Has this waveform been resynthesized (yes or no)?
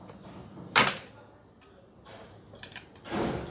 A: no